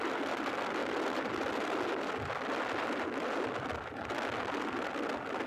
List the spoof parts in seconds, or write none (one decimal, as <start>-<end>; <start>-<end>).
none